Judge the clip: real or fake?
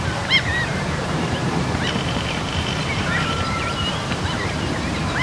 fake